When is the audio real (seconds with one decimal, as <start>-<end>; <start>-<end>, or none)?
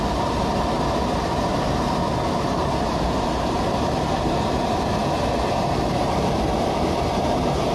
none